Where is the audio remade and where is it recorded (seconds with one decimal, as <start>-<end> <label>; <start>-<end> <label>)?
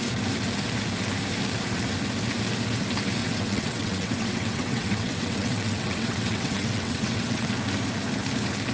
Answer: 0.0-3.2 recorded; 3.2-7.5 remade; 7.5-8.7 recorded